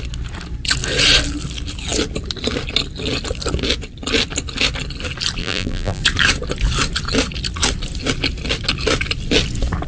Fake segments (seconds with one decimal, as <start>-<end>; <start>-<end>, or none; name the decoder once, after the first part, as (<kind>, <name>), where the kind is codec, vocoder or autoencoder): 5.4-6.0 (vocoder, BigVGAN v2)